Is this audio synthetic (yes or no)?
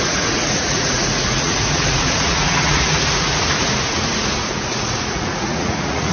yes